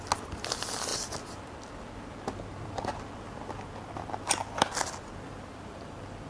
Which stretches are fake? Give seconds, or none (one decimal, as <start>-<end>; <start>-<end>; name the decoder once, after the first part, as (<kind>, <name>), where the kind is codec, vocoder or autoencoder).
none